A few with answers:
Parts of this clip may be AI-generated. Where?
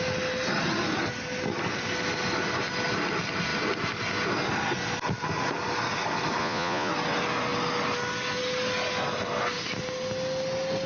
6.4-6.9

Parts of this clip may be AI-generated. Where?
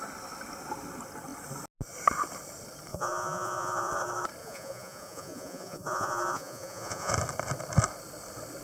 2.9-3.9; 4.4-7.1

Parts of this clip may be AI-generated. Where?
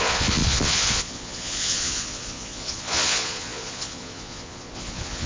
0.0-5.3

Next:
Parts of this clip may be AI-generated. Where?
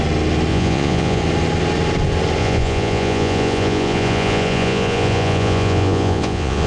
0.5-1.2; 2.4-6.7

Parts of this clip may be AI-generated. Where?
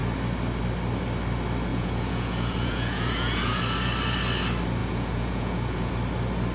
1.7-3.6; 4.8-5.9